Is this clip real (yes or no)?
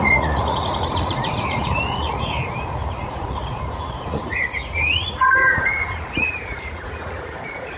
no